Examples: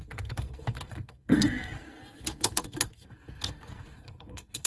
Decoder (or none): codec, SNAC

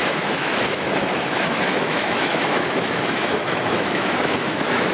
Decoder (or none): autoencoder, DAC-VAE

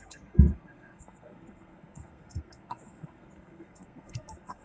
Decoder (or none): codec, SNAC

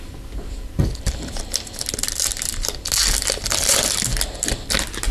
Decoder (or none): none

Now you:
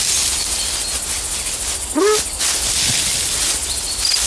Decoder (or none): none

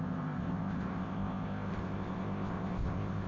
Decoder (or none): codec, ZipCodec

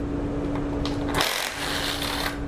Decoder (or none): none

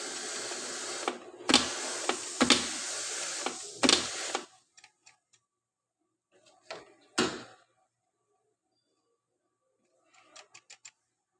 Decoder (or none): none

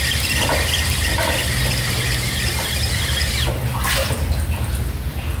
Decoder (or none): none